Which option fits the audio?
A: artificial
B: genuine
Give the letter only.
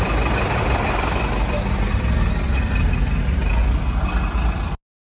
B